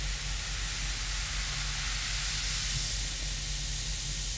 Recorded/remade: recorded